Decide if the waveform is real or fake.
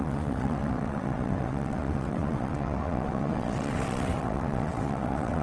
fake